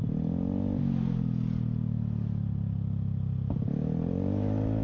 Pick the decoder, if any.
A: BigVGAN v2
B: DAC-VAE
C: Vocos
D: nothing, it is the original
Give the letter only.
D